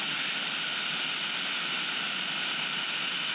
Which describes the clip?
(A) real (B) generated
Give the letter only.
A